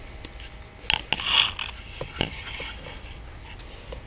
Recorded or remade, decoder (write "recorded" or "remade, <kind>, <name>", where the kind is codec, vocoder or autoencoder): recorded